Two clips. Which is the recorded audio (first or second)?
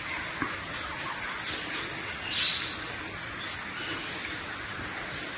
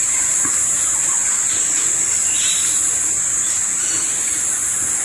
first